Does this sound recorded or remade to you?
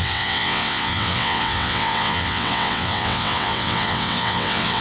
remade